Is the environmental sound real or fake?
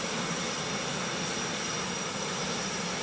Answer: real